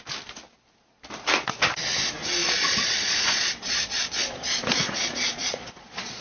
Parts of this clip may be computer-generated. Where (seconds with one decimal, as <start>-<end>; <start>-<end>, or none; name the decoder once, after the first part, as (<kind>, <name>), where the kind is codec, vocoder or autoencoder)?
2.4-6.2 (vocoder, Vocos)